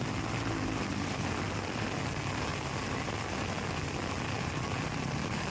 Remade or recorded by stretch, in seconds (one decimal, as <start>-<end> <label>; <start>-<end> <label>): 0.0-5.5 recorded